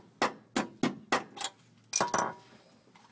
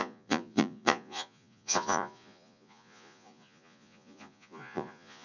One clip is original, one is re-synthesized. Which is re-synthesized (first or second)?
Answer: second